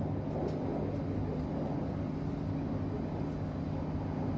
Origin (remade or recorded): recorded